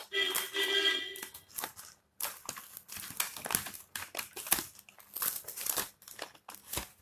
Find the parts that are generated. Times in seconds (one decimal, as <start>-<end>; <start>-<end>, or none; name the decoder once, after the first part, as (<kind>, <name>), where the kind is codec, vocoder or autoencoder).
none